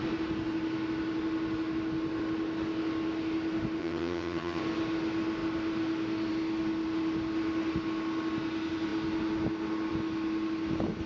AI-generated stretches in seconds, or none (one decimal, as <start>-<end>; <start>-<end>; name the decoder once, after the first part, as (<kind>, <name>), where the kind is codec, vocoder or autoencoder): 3.8-4.6 (vocoder, HiFi-GAN)